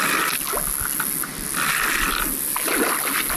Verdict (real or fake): real